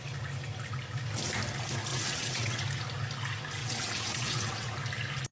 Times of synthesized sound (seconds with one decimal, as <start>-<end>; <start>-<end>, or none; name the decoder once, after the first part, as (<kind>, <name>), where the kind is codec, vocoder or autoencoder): 1.9-2.6 (vocoder, WaveNeXt); 3.6-4.7